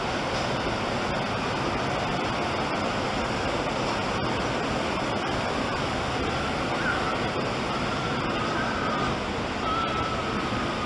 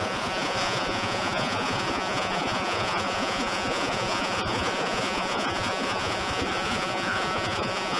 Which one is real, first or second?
first